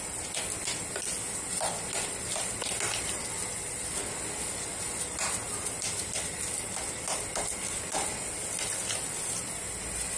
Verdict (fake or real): real